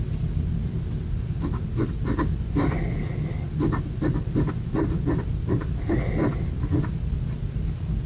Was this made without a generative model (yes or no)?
yes